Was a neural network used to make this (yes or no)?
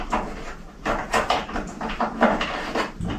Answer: yes